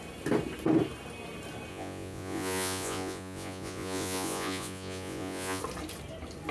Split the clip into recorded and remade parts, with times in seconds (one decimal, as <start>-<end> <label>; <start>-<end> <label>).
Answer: 0.0-1.7 recorded; 1.7-5.6 remade; 5.6-6.5 recorded